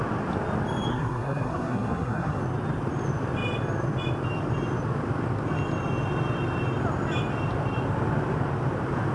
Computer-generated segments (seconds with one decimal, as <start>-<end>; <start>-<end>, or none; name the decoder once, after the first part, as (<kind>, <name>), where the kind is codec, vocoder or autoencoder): 0.9-2.4 (codec, SNAC)